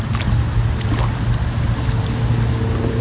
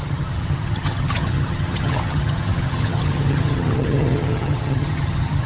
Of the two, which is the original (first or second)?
first